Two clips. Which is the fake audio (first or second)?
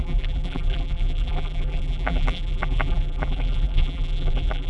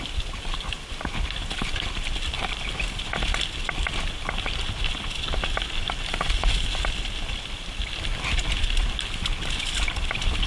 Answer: first